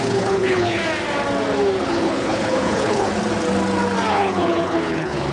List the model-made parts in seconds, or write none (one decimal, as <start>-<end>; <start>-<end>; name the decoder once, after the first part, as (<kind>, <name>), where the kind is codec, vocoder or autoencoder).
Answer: 0.0-0.8 (codec, HILCodec); 1.8-3.1; 4.1-5.3